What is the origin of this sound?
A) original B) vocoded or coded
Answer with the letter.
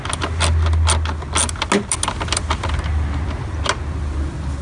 A